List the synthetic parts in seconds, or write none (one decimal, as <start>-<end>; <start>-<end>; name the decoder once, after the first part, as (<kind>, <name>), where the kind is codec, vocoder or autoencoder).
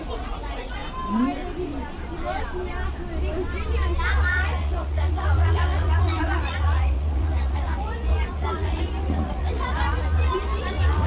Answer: 0.0-0.8 (vocoder, Vocos); 4.2-11.1